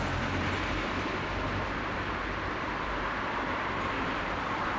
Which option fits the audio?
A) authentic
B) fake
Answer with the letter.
A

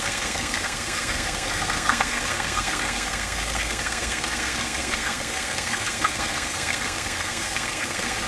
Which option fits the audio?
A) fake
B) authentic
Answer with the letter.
A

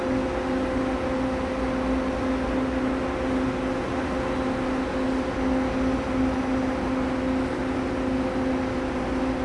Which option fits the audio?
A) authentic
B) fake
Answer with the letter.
A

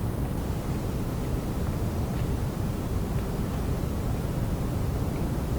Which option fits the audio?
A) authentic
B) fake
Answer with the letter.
A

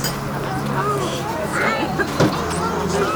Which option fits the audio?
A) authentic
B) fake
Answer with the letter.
A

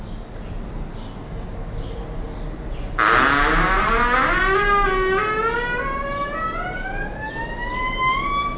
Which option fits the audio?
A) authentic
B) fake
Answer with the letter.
A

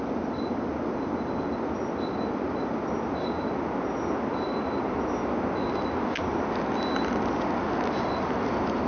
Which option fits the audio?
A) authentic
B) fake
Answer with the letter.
A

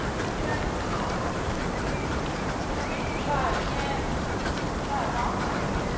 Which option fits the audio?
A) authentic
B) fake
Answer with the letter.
B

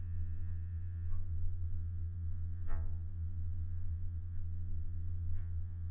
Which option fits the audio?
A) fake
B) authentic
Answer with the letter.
A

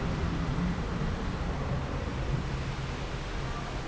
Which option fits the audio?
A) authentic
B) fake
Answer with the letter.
A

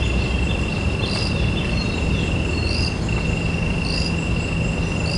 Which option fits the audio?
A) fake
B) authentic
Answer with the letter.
B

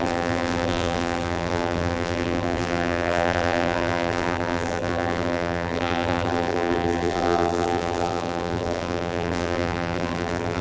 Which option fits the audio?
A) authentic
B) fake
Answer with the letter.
B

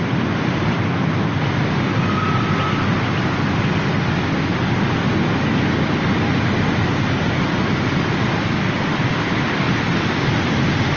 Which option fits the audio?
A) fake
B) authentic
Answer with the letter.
B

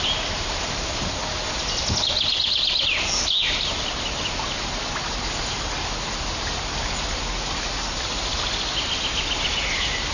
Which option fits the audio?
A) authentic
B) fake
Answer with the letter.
A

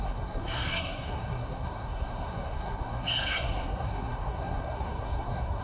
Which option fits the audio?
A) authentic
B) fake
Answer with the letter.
B